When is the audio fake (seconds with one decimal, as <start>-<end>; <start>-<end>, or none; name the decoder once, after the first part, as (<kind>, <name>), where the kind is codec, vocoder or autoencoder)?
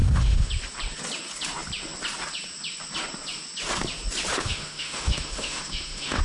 0.0-0.5 (autoencoder, DAC-VAE); 4.3-6.2